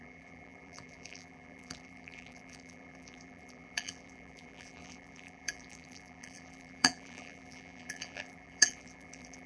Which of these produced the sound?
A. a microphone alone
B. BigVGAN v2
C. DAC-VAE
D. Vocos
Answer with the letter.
B